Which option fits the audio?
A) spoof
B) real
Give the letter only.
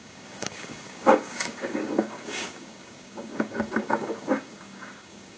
A